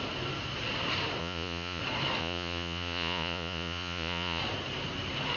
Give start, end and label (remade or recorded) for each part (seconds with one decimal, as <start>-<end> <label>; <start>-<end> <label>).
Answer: 0.0-1.2 recorded; 1.2-1.8 remade; 1.8-2.2 recorded; 2.2-4.4 remade; 4.4-5.4 recorded